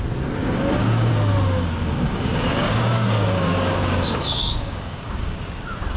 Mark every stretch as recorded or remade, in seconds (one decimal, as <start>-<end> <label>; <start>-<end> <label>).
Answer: 0.0-0.4 recorded; 0.4-1.1 remade; 1.1-1.8 recorded; 1.8-5.4 remade; 5.4-6.0 recorded